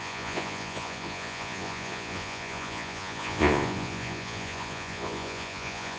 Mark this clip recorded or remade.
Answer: remade